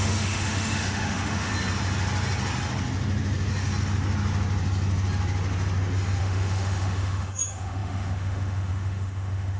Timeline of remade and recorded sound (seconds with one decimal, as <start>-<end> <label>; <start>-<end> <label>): 0.0-1.5 remade; 1.5-6.2 recorded; 6.2-9.6 remade

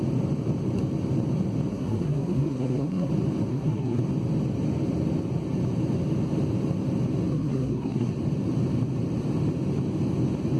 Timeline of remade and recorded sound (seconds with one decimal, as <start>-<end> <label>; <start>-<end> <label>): 0.0-1.7 recorded; 1.7-3.1 remade; 3.1-3.5 recorded; 3.5-4.0 remade; 4.0-7.3 recorded; 7.3-8.1 remade; 8.1-10.6 recorded

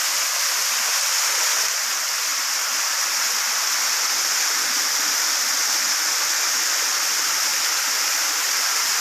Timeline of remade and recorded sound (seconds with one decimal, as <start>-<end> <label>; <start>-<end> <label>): 0.0-9.0 recorded

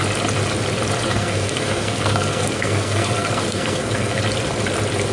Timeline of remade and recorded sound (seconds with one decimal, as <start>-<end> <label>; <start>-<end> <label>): 0.0-1.1 recorded; 1.1-4.2 remade; 4.2-5.1 recorded